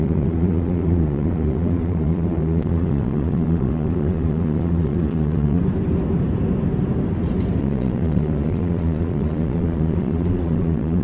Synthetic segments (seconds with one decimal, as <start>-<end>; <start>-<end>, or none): 0.0-5.6; 7.6-11.0